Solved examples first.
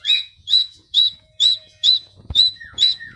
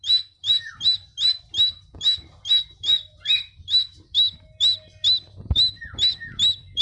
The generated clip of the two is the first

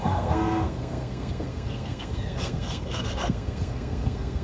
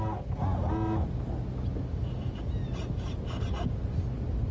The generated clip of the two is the first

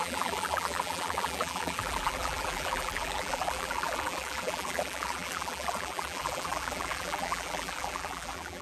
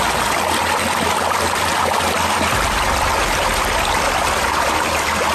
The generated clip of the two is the first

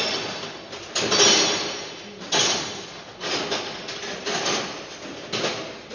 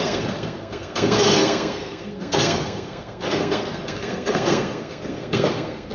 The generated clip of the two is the second